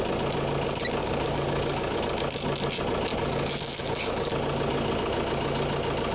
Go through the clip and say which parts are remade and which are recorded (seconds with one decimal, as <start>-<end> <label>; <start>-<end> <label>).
0.0-1.0 recorded; 1.0-2.0 remade; 2.0-3.1 recorded; 3.1-4.3 remade; 4.3-6.1 recorded